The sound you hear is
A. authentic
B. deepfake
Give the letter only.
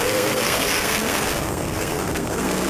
B